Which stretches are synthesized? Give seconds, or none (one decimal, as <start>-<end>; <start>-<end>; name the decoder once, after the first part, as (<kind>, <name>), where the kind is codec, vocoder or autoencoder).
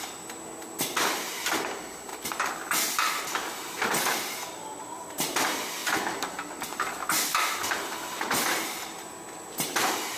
none